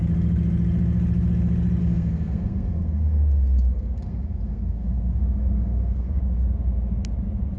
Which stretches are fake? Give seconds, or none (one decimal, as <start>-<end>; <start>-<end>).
1.8-6.2